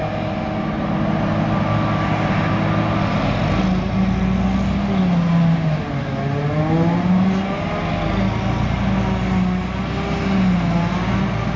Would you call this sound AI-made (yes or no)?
no